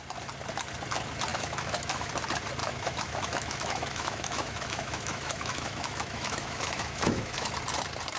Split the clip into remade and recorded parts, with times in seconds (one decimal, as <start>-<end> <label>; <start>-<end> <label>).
0.0-1.3 recorded; 1.3-2.1 remade; 2.1-2.6 recorded; 2.6-7.5 remade; 7.5-8.2 recorded